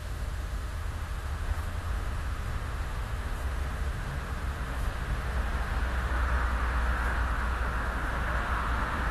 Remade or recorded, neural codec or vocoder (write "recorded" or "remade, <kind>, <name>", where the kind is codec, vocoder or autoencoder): remade, autoencoder, DAC-VAE